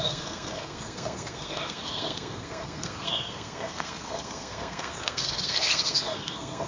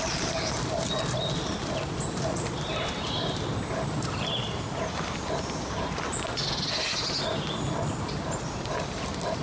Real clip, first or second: second